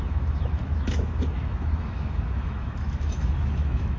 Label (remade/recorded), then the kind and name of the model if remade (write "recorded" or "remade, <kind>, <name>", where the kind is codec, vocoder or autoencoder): remade, autoencoder, DAC-VAE